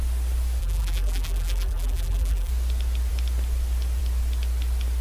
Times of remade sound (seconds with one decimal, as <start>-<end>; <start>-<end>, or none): 0.6-2.5